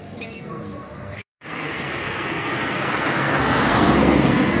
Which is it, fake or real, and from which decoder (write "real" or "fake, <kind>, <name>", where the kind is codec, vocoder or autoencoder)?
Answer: fake, codec, SNAC